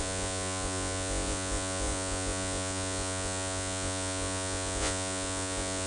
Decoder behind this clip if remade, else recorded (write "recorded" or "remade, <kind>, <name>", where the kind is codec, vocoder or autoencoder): remade, vocoder, Vocos